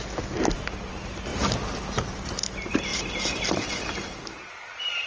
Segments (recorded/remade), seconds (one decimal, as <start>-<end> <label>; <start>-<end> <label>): 0.0-5.1 recorded